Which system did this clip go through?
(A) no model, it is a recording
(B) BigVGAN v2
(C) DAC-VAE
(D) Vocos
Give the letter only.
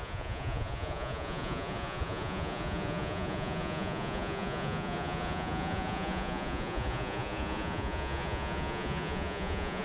D